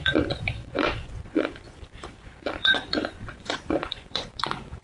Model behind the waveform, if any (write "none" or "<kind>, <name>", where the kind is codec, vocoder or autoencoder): vocoder, Vocos